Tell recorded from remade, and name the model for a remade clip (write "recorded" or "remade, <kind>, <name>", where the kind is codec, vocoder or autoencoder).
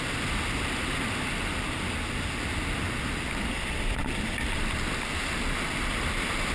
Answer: recorded